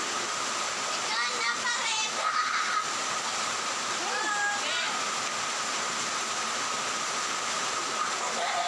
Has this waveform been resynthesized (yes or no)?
no